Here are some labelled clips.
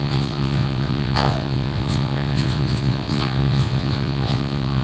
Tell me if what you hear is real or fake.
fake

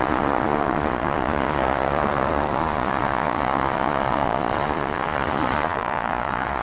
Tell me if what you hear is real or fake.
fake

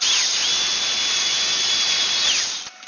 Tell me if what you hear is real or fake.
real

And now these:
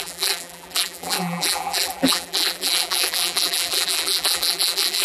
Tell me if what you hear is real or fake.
fake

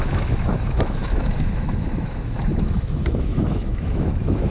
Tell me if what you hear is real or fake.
fake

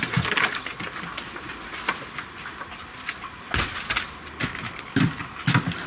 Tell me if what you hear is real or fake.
real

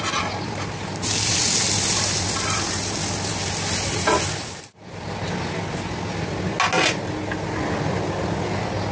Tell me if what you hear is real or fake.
real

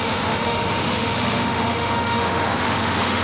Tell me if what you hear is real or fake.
fake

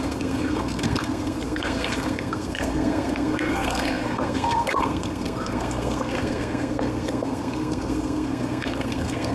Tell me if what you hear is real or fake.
fake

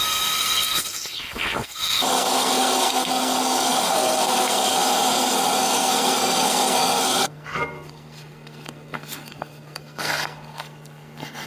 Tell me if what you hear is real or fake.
fake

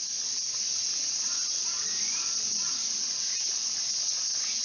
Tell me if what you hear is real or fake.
real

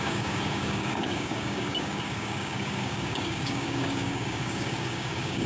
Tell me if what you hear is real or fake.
fake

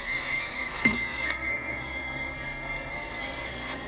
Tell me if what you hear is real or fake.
fake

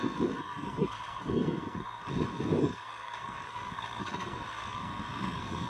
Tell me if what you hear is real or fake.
fake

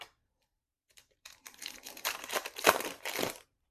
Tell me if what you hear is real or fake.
fake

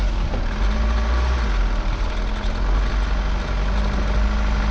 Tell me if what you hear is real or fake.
real